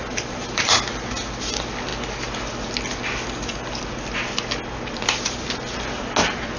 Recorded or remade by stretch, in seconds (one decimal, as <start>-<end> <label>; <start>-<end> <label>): 0.0-0.8 remade; 0.8-6.6 recorded